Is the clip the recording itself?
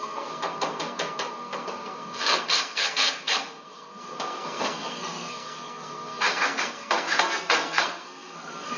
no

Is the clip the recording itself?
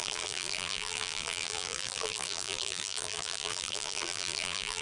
no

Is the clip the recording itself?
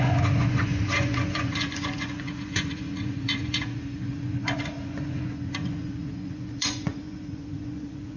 no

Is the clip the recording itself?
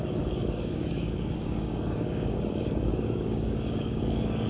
no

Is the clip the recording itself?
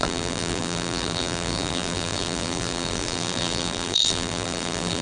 no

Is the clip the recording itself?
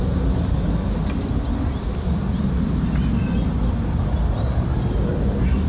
yes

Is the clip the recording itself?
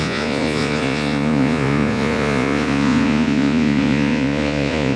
no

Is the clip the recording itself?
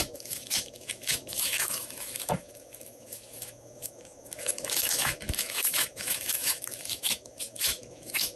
no